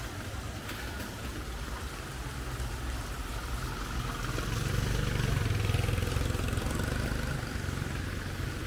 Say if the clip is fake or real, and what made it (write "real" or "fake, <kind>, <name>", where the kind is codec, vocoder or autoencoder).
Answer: real